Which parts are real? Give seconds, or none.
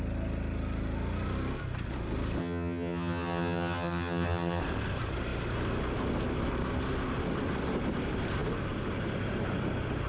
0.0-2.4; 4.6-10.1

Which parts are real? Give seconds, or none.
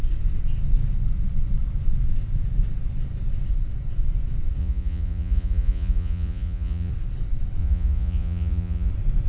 0.0-4.6; 6.9-7.6; 8.9-9.3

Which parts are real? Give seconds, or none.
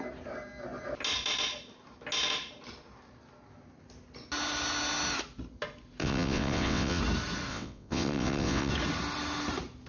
0.0-6.0; 7.0-7.5; 8.7-9.9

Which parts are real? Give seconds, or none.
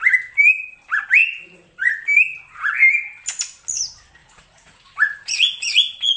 0.0-1.2; 1.9-4.2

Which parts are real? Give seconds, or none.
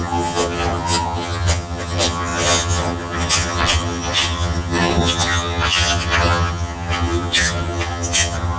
none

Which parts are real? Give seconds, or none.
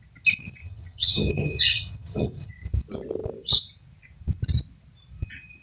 0.0-0.6; 2.5-5.6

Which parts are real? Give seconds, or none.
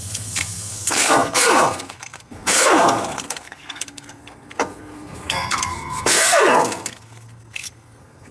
none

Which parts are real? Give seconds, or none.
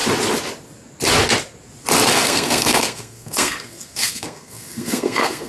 0.0-2.1